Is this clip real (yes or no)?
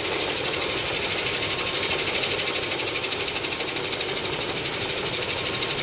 yes